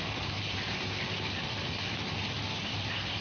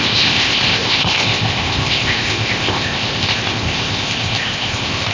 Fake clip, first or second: second